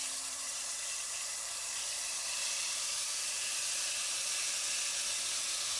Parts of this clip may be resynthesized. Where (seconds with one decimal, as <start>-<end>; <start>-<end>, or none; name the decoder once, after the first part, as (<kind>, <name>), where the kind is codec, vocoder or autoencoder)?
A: 0.0-3.5 (vocoder, BigVGAN v2)